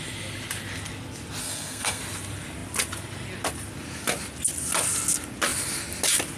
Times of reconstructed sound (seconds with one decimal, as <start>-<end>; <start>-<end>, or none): 1.4-2.0